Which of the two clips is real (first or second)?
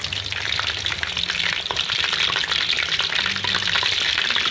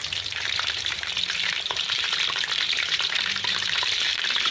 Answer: first